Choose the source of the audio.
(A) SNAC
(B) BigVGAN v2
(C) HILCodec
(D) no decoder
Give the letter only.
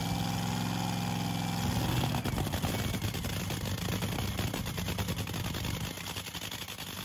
D